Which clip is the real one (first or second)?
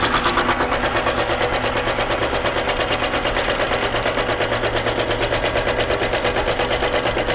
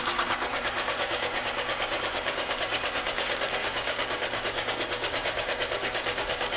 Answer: first